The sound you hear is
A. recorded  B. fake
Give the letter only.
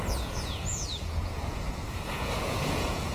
B